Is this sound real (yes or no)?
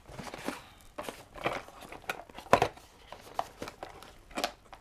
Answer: yes